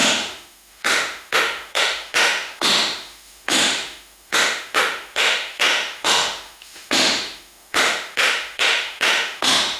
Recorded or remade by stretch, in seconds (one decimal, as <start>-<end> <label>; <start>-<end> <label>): 0.0-9.8 remade